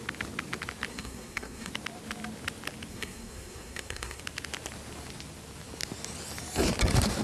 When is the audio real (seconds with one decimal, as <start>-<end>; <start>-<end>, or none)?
0.0-0.9; 1.7-2.9; 4.2-7.2